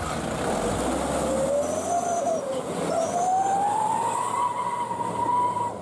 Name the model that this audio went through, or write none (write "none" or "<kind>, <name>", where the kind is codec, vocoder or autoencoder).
none